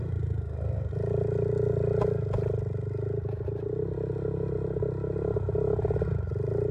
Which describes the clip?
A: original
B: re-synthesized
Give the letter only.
A